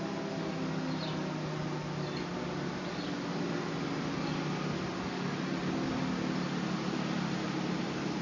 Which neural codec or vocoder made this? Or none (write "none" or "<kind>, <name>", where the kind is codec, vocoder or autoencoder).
none